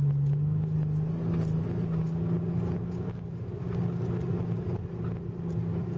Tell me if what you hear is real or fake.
real